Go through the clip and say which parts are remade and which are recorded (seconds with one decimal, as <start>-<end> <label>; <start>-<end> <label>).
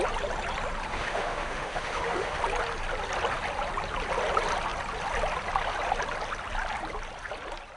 0.0-0.9 recorded; 0.9-2.4 remade; 2.4-7.8 recorded